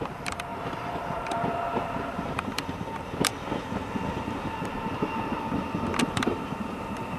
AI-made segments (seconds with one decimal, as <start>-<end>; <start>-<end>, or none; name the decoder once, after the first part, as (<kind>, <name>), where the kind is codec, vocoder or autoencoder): 0.0-3.3 (vocoder, BigVGAN v2); 6.0-7.2